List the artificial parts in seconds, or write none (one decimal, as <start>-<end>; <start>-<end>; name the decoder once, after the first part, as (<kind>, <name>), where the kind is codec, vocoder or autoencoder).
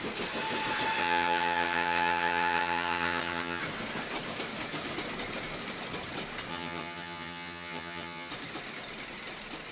1.0-3.6 (vocoder, HiFi-GAN); 6.5-8.3